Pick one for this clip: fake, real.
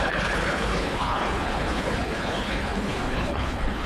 fake